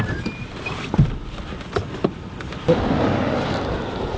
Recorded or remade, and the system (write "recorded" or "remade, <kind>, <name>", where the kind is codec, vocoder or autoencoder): recorded